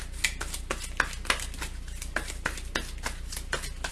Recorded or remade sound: recorded